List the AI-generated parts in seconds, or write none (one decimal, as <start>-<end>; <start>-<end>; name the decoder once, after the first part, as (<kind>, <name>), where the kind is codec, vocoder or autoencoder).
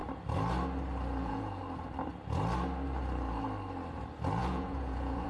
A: 1.2-1.6 (vocoder, Vocos); 4.4-5.3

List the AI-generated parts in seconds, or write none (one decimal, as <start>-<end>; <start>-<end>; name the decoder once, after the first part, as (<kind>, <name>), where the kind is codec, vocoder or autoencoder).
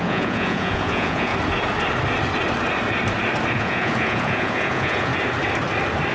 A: 0.0-1.3 (vocoder, Vocos); 3.5-5.1